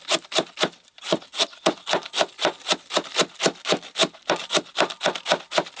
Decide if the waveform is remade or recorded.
recorded